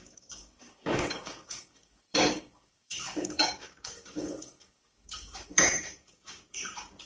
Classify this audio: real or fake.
fake